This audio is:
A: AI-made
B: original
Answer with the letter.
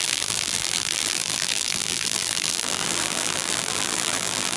A